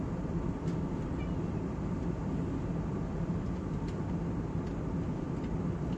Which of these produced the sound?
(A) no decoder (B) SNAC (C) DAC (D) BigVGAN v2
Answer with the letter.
A